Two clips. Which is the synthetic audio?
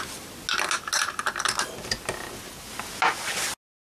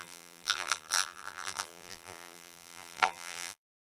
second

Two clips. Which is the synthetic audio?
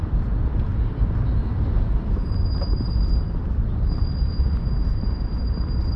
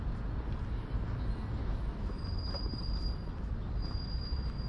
first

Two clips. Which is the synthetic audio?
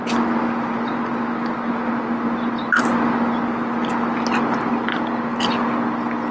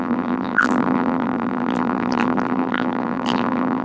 second